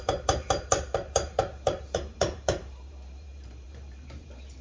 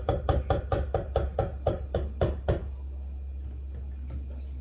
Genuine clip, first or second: second